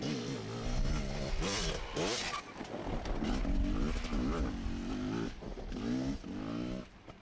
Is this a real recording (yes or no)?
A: yes